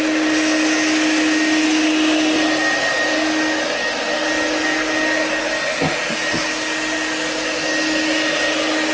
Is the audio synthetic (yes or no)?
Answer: no